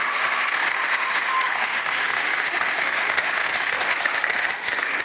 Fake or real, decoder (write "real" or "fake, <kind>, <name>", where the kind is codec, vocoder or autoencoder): fake, autoencoder, DAC-VAE